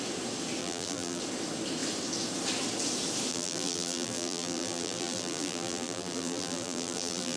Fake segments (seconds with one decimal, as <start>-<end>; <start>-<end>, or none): 0.6-1.2; 3.3-7.4